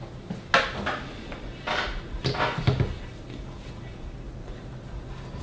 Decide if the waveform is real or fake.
real